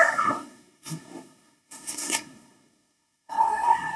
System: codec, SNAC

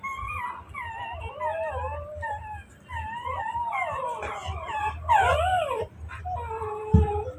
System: none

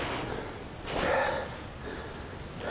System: none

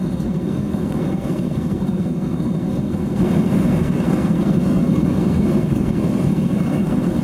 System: codec, SNAC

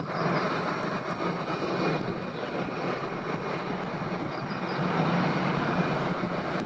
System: none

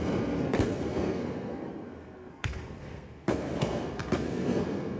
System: codec, SNAC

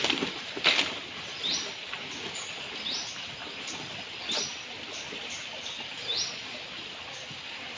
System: none